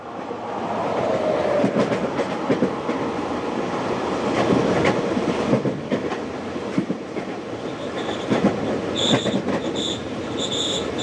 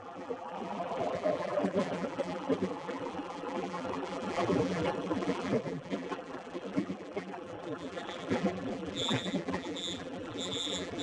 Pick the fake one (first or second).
second